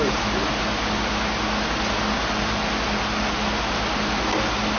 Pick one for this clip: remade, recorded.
recorded